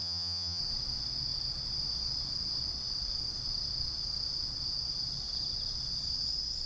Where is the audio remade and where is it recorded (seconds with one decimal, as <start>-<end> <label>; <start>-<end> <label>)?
0.0-0.6 remade; 0.6-6.7 recorded